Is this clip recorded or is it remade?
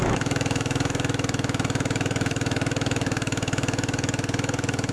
remade